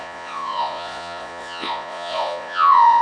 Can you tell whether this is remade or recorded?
remade